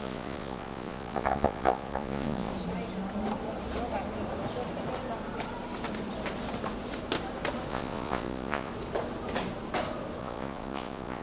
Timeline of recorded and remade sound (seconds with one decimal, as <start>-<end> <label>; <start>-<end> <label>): 0.0-2.5 remade; 2.5-7.7 recorded; 7.7-8.7 remade; 8.7-10.2 recorded; 10.2-11.2 remade